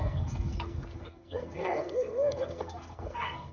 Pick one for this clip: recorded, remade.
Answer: remade